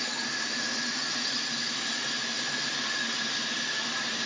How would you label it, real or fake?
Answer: real